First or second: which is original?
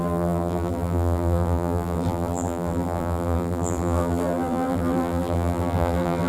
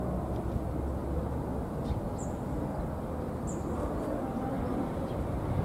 second